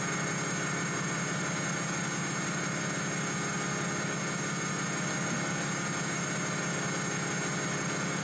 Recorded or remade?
recorded